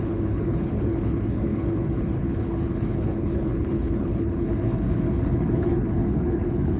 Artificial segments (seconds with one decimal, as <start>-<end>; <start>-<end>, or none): 0.0-6.8